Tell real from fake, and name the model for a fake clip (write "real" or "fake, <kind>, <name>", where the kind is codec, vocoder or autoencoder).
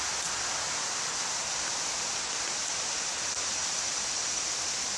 real